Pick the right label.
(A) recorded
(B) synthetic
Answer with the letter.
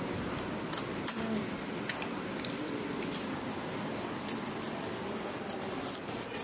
A